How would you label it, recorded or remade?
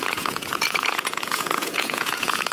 remade